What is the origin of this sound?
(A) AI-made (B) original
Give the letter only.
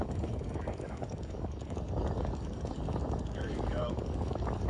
A